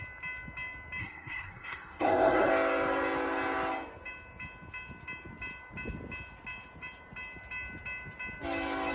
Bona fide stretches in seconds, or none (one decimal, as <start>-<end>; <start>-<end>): 0.0-1.0; 2.5-8.9